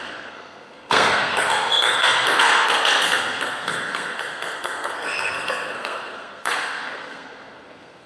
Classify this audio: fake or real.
fake